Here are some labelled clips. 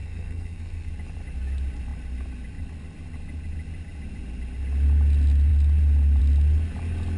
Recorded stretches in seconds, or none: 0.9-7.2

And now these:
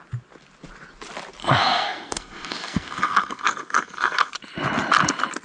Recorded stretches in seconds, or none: 0.0-1.4; 4.3-5.4

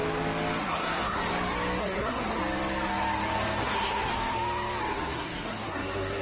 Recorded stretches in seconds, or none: 0.0-0.6; 1.2-1.8; 2.4-3.6; 4.1-4.8

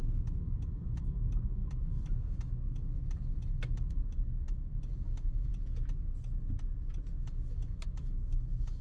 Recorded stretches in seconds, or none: 5.5-7.1

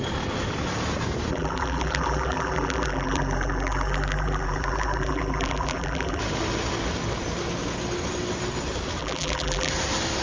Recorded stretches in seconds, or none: 0.0-1.3; 6.2-9.0; 9.7-10.2

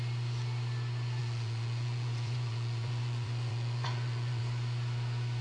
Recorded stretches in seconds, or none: 0.0-1.2; 4.4-5.4

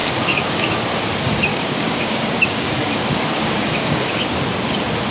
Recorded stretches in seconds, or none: 0.6-1.5; 2.9-3.4; 4.3-5.1

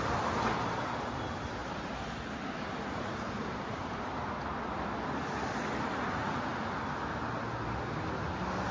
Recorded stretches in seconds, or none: 0.0-1.6; 4.6-8.7